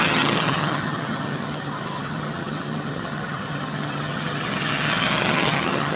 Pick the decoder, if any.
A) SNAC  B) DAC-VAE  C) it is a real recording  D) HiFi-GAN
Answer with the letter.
D